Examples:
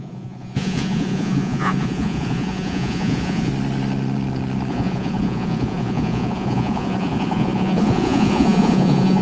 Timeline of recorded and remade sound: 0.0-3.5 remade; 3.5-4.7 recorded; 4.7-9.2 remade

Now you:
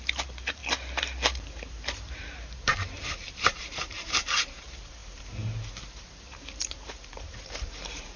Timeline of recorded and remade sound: 0.0-0.6 remade; 0.6-1.5 recorded; 1.5-8.2 remade

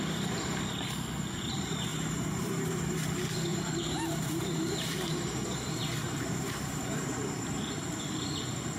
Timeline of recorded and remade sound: 0.0-1.9 recorded; 1.9-2.7 remade; 2.7-3.5 recorded; 3.5-7.9 remade; 7.9-8.8 recorded

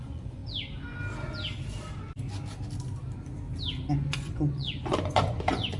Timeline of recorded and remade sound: 0.0-0.4 remade; 0.4-3.9 recorded; 3.9-5.8 remade

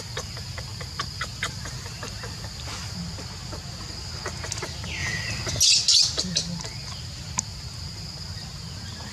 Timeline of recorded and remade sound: 0.0-9.1 recorded

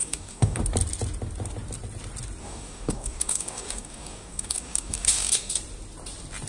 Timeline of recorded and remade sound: 0.0-0.6 remade; 0.6-2.4 recorded; 2.4-5.6 remade; 5.6-6.5 recorded

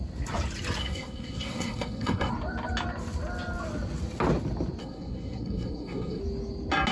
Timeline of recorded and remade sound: 0.0-0.8 recorded; 0.8-2.3 remade; 2.3-4.8 recorded; 4.8-6.2 remade; 6.2-6.9 recorded

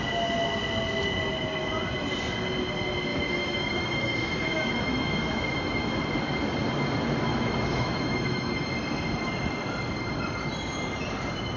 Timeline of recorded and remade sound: 0.0-3.1 recorded; 3.1-6.0 remade; 6.0-7.3 recorded; 7.3-8.7 remade; 8.7-11.6 recorded